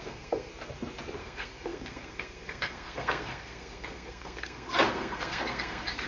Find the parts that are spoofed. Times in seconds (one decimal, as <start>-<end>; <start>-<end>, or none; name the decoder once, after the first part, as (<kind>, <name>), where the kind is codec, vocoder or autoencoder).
0.0-0.5 (codec, SNAC); 1.2-6.1

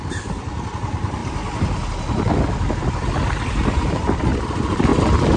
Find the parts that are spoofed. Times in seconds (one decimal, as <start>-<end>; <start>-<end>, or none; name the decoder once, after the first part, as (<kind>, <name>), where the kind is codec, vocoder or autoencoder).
0.0-1.2 (vocoder, BigVGAN v2); 3.3-4.9

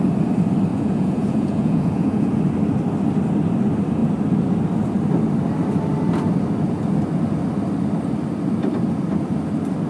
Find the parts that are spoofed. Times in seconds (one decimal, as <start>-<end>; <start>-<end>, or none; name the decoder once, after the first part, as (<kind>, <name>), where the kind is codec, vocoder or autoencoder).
0.7-2.4 (vocoder, Vocos)